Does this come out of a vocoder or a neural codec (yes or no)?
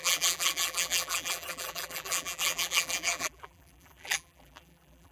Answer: yes